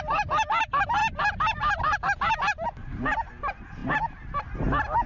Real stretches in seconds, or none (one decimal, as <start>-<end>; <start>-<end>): 0.0-1.0; 2.4-5.1